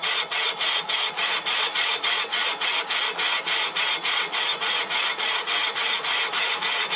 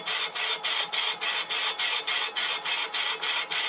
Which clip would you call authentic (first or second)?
second